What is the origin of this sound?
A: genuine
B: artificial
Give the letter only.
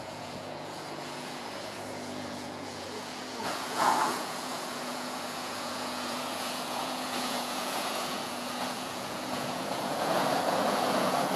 B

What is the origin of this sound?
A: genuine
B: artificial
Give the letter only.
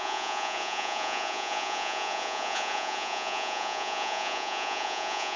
B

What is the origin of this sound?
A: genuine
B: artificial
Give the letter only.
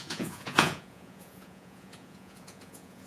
B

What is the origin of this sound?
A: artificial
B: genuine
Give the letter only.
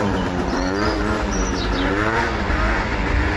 A